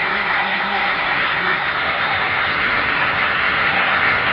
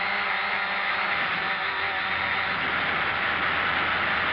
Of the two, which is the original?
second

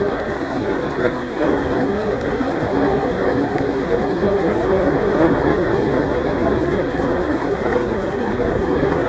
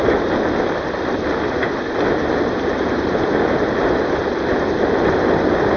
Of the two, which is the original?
second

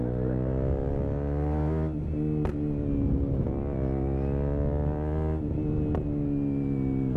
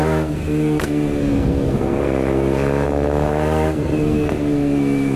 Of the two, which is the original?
first